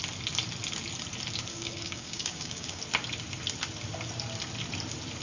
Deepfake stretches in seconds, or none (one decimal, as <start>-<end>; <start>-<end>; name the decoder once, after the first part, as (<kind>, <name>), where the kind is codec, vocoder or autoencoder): 1.5-2.8 (codec, DAC)